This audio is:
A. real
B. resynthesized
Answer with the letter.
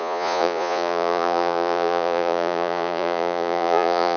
B